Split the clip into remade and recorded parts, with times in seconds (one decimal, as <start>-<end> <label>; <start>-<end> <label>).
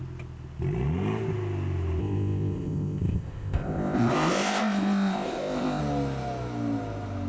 0.0-2.0 recorded; 2.0-5.8 remade; 5.8-7.3 recorded